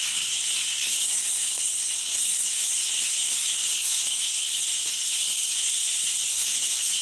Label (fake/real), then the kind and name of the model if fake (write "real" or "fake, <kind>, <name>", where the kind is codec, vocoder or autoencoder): fake, codec, SNAC